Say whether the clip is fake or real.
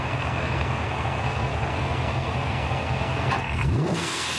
fake